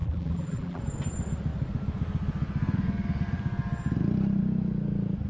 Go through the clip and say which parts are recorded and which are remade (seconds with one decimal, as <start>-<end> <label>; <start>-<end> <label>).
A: 0.0-0.8 remade; 0.8-5.3 recorded